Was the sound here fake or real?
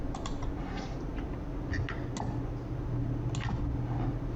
real